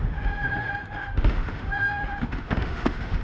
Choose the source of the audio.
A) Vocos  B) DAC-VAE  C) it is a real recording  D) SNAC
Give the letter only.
B